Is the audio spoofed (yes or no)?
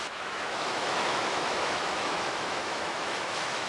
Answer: yes